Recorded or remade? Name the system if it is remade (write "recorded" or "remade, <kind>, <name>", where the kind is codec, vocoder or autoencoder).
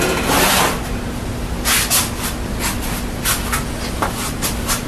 recorded